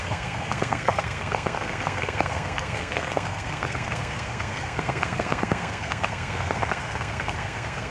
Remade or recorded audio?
remade